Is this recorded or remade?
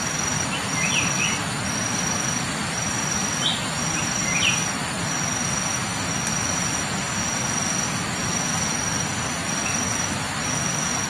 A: recorded